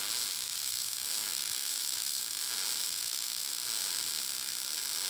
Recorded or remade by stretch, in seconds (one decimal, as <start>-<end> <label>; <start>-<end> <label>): 0.0-0.6 recorded; 0.6-2.4 remade; 2.4-2.8 recorded; 2.8-4.0 remade; 4.0-5.1 recorded